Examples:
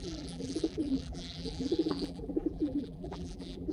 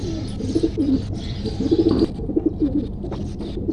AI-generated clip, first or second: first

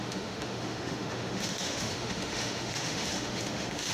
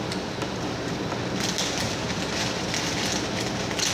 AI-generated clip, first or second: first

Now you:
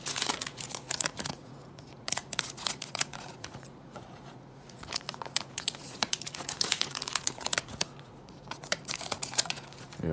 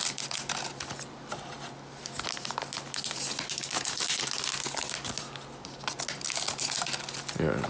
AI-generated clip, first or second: first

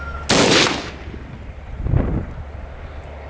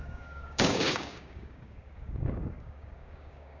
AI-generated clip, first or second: second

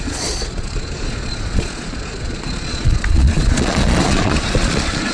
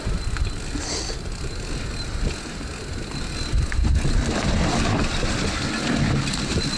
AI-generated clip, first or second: first